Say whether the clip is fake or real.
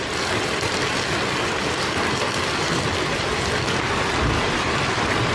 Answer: real